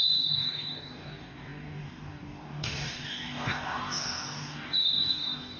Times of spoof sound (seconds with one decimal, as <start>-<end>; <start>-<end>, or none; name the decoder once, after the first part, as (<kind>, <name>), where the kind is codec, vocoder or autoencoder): 0.0-5.6 (codec, DAC)